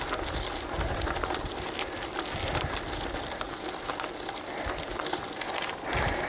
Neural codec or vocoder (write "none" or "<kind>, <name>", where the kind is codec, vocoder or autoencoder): none